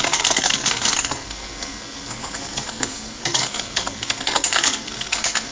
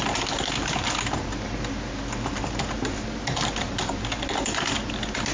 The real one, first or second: second